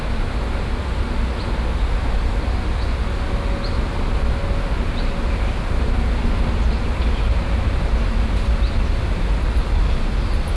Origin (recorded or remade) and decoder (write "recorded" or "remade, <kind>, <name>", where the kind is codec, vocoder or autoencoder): recorded